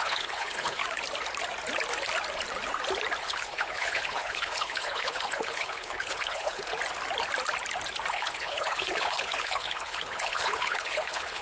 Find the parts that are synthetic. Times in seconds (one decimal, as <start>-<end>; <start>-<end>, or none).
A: 0.0-0.8; 3.2-6.7; 8.1-11.4